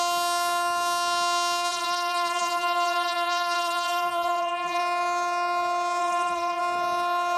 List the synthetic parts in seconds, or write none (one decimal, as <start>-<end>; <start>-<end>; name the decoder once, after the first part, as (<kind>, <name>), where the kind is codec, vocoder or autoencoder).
1.7-4.8 (vocoder, BigVGAN v2); 6.0-6.6